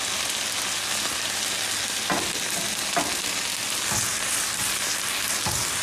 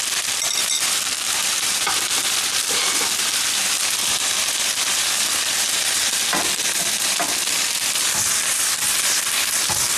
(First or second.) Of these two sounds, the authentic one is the first